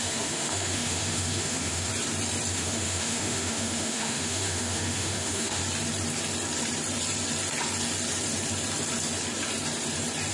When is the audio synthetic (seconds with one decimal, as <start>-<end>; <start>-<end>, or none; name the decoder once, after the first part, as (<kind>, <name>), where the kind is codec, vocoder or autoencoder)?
0.0-1.9 (autoencoder, DAC-VAE); 2.5-5.6